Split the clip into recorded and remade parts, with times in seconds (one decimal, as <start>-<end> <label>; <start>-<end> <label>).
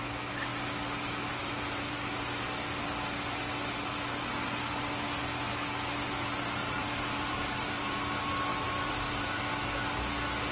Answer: 0.0-6.6 recorded; 6.6-7.9 remade; 7.9-8.5 recorded; 8.5-9.4 remade; 9.4-10.5 recorded